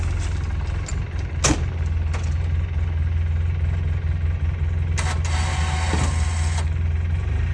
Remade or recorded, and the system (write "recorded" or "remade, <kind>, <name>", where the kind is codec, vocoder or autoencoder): recorded